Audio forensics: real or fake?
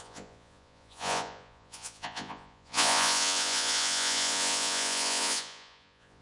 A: fake